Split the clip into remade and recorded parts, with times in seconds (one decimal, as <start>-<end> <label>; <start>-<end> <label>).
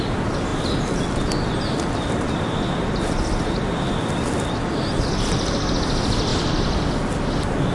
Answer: 0.0-6.3 recorded; 6.3-7.2 remade; 7.2-7.7 recorded